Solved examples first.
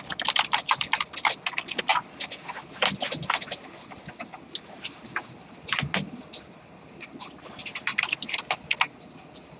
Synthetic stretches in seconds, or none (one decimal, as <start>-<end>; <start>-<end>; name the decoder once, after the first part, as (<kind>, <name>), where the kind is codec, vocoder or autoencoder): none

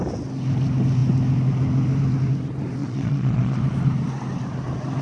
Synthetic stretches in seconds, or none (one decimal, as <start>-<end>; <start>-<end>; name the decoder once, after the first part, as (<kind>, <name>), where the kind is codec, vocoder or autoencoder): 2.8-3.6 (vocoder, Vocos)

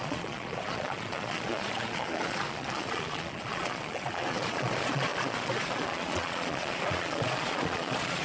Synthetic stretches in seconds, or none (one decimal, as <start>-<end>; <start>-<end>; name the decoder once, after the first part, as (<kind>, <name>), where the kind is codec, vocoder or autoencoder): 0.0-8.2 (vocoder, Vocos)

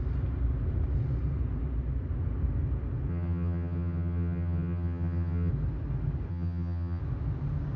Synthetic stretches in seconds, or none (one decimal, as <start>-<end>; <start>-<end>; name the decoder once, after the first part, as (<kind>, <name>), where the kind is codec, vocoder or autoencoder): 3.1-5.5 (vocoder, HiFi-GAN); 6.3-7.0